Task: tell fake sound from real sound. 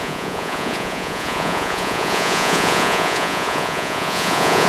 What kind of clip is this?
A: fake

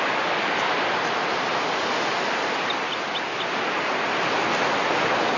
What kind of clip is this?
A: real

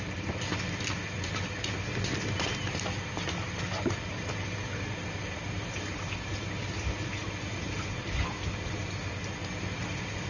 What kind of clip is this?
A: real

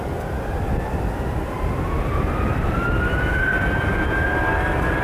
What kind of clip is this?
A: real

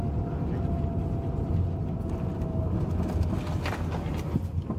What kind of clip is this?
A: real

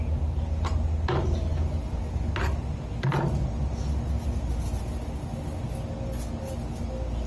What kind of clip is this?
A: real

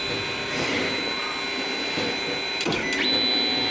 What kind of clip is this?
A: real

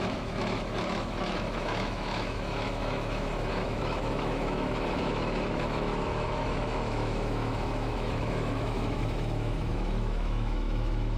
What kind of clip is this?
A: fake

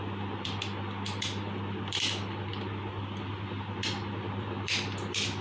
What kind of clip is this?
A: fake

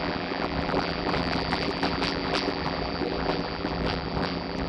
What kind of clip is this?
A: fake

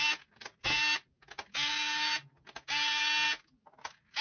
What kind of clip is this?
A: real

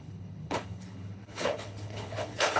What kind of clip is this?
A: fake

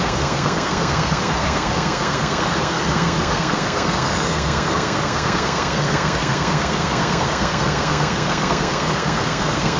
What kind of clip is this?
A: fake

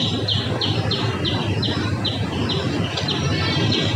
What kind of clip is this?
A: fake